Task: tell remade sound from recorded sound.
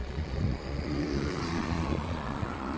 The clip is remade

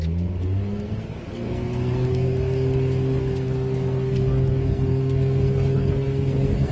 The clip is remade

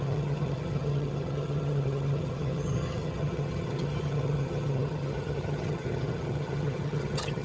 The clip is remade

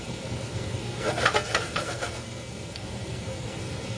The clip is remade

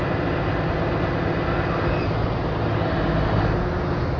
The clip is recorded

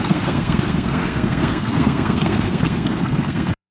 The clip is remade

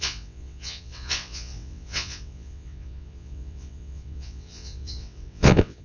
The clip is remade